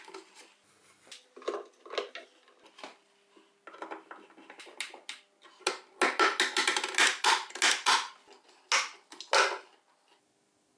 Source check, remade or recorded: recorded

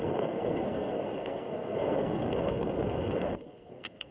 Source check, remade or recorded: remade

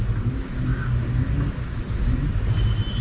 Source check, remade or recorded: recorded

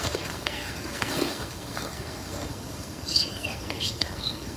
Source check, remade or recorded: remade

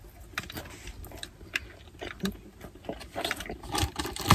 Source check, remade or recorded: recorded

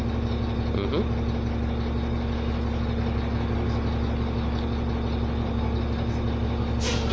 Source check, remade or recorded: recorded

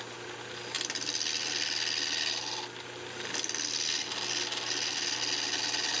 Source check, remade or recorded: recorded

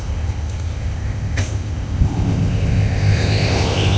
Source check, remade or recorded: remade